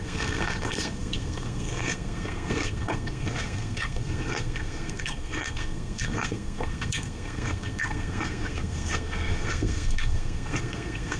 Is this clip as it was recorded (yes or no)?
no